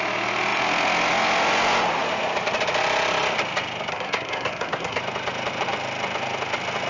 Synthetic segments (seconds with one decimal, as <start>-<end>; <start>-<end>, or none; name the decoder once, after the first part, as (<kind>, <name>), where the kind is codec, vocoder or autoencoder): 3.9-5.0 (codec, SNAC)